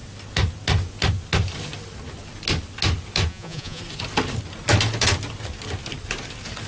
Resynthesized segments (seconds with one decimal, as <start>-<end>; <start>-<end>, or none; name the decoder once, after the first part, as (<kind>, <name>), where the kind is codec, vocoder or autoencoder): 3.3-3.8 (vocoder, Vocos)